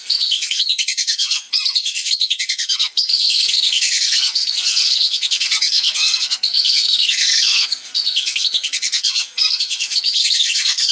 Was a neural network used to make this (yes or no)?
yes